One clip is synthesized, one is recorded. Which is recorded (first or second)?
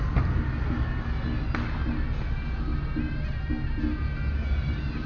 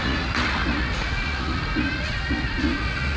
first